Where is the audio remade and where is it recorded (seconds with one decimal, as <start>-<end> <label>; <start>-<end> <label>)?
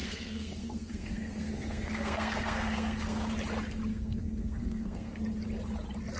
0.0-3.3 remade; 3.3-3.9 recorded; 3.9-5.2 remade; 5.2-6.2 recorded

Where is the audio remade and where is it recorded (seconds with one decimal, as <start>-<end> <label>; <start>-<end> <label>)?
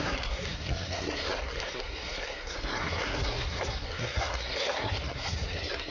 0.0-5.9 remade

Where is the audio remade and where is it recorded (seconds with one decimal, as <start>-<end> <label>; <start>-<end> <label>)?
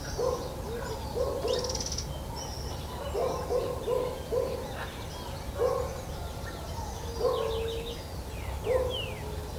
0.0-9.6 recorded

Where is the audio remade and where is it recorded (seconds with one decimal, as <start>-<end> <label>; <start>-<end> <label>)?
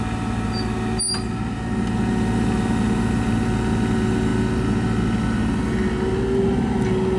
0.0-7.2 recorded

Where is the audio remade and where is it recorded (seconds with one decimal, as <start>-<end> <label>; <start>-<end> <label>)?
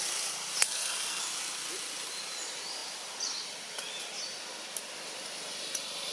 0.0-0.6 recorded; 0.6-1.2 remade; 1.2-6.1 recorded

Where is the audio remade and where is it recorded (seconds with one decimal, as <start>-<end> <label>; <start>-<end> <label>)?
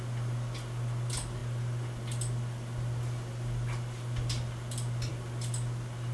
0.0-6.1 recorded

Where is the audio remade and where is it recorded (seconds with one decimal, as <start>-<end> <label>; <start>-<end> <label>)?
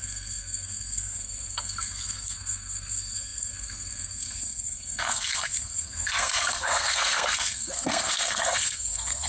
0.0-9.3 remade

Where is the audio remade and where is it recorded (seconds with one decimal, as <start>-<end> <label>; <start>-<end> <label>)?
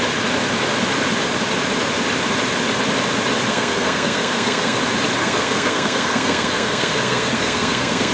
0.0-3.5 recorded; 3.5-4.8 remade; 4.8-5.2 recorded; 5.2-8.1 remade